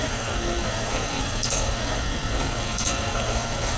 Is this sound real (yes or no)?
no